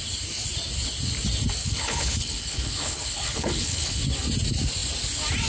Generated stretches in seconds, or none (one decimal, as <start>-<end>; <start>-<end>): 1.6-4.0